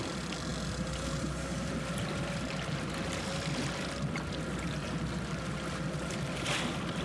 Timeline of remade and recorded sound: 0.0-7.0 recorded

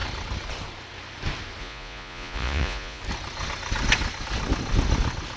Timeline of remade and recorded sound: 0.0-1.6 recorded; 1.6-3.0 remade; 3.0-5.4 recorded